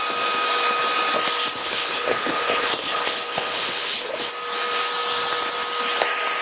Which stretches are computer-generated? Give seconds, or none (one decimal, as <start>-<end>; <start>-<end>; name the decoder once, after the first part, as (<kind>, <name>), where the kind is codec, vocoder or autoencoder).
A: 1.6-4.3 (codec, HILCodec)